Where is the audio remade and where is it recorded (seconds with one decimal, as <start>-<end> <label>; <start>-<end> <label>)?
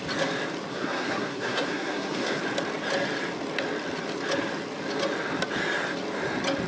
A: 0.0-0.7 recorded; 0.7-2.4 remade; 2.4-6.7 recorded